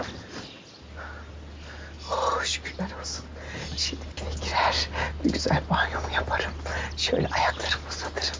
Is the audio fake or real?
real